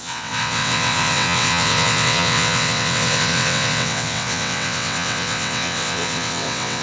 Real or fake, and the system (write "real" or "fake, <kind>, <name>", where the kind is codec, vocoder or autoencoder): fake, vocoder, WaveNeXt